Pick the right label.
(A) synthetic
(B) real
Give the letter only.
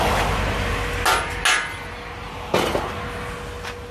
B